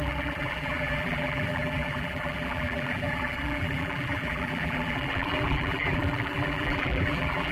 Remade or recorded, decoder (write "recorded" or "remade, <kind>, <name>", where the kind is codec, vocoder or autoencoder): remade, vocoder, BigVGAN v2